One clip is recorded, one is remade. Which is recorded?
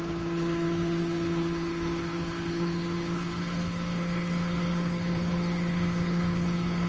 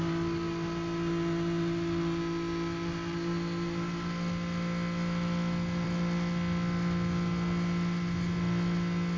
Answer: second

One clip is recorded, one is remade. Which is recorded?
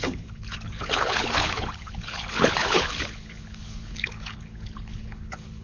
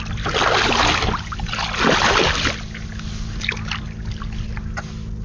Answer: second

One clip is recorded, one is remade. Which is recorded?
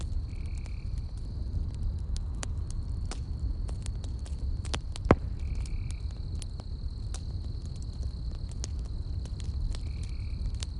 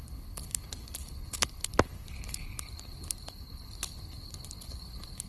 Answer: first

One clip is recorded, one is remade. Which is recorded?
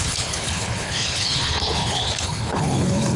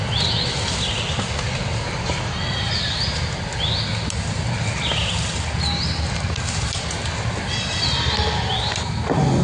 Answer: second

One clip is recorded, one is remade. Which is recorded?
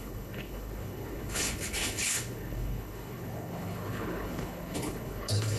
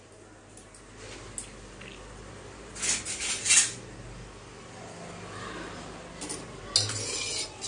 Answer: second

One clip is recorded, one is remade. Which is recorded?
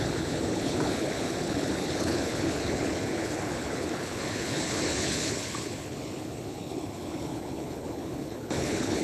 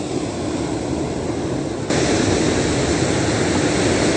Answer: second